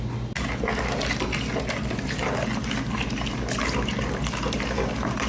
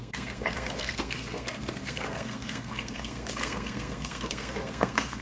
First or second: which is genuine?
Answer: first